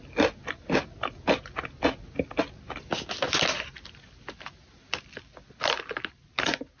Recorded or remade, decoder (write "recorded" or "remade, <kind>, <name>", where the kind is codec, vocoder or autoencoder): recorded